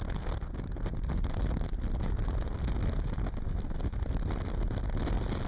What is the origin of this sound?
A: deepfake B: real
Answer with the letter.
B